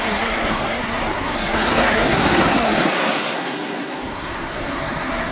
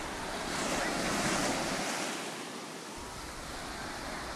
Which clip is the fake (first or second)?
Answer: first